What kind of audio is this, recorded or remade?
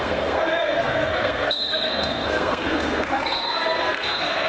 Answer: remade